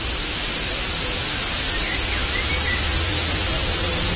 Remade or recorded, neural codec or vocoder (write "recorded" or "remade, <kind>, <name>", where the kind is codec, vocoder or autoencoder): remade, vocoder, BigVGAN v2